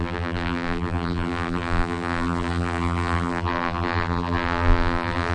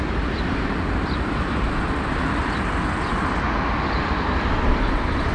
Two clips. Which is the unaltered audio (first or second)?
second